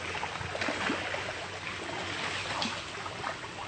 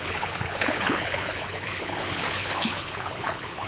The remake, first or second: second